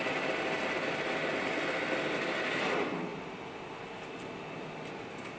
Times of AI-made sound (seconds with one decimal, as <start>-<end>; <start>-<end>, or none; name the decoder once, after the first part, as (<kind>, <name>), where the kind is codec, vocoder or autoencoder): none